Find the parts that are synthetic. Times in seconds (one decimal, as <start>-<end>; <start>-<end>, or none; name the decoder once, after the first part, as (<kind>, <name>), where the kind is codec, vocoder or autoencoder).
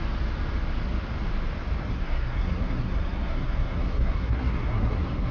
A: 1.8-5.3 (codec, SNAC)